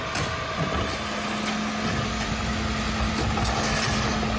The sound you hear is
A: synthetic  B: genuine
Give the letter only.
B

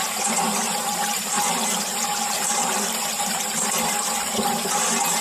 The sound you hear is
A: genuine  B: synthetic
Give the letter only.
A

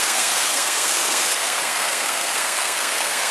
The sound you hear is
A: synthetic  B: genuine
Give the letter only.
A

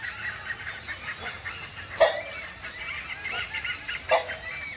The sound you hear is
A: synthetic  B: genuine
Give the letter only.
B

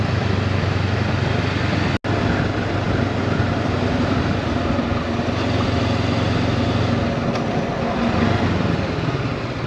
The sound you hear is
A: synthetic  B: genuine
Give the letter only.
B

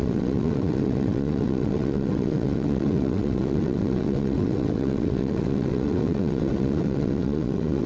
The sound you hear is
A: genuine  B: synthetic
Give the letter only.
B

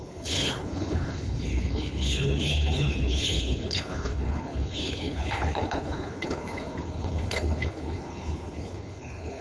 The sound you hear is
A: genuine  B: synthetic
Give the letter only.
B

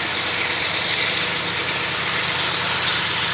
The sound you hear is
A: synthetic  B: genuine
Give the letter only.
B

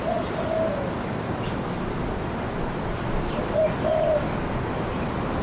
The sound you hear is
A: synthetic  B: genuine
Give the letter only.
B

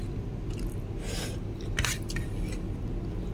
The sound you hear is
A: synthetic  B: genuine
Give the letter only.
B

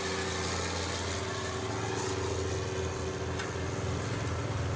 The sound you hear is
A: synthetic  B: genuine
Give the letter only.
B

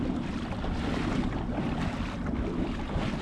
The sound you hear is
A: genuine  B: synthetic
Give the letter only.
A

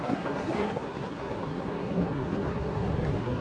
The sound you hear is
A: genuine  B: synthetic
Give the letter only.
B